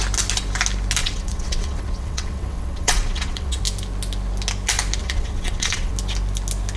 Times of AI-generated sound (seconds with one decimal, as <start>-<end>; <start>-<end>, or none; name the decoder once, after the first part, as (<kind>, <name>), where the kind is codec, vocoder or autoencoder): 1.0-3.6 (vocoder, WaveNeXt); 5.0-5.9